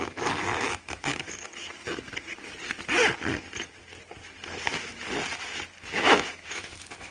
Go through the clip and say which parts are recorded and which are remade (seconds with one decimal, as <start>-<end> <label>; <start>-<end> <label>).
0.0-1.5 remade; 1.5-5.8 recorded; 5.8-7.1 remade